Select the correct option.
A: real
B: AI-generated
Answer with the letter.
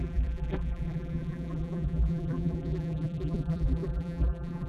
B